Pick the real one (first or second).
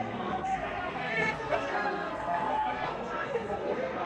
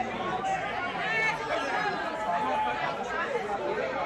second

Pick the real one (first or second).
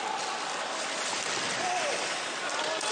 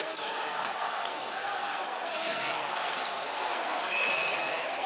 first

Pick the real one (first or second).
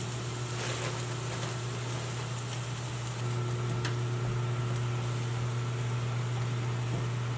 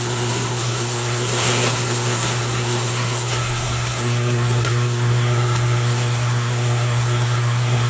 first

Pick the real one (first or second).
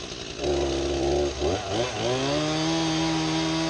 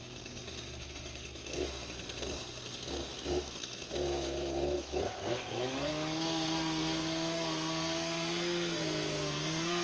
first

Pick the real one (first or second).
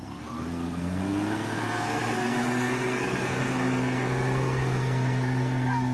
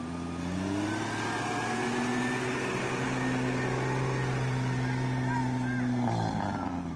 second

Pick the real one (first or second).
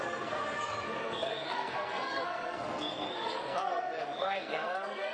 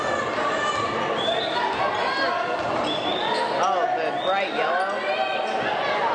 second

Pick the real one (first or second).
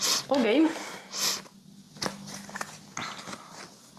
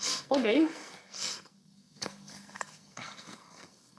first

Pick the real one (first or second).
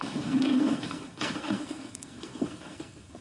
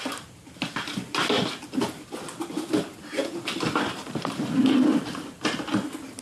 second